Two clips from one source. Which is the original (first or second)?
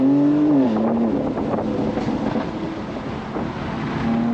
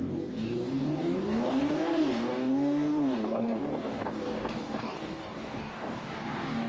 first